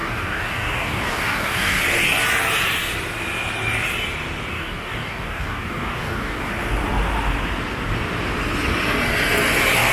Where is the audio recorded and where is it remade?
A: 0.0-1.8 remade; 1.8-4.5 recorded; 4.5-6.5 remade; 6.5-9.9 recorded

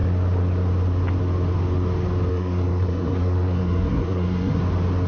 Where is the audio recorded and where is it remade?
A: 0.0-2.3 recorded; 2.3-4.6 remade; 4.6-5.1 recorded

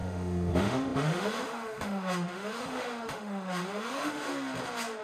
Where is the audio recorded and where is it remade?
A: 0.0-4.3 remade; 4.3-5.0 recorded